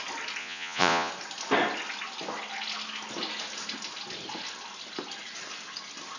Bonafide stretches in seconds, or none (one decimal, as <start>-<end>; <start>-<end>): 0.0-0.4; 1.1-6.2

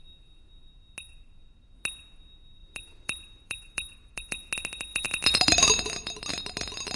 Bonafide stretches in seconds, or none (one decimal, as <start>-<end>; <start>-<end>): 0.0-2.6; 4.5-4.9; 5.7-7.0

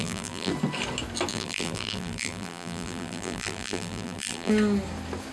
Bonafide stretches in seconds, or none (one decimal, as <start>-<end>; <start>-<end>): 0.5-1.3; 4.5-5.3

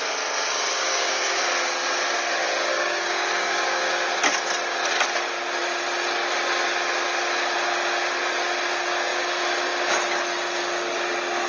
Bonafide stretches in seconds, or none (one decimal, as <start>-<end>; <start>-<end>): 0.0-0.8; 1.4-2.7; 3.8-11.5

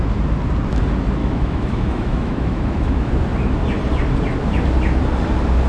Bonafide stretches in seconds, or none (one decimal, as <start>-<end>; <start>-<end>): 0.0-1.2; 3.1-5.7